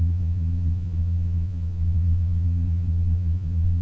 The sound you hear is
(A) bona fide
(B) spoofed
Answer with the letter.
B